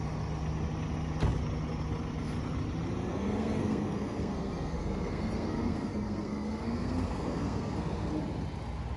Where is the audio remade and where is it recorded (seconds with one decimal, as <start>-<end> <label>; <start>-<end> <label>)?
0.0-3.1 recorded; 3.1-8.1 remade; 8.1-9.0 recorded